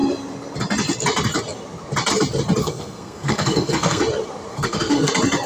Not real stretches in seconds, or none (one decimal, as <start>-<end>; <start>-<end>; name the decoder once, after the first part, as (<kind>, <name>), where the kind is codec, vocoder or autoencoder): 2.6-4.0 (codec, SNAC); 4.5-5.1